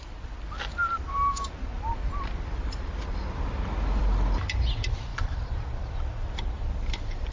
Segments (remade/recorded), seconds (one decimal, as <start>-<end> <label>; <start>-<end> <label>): 0.0-5.1 recorded; 5.1-7.3 remade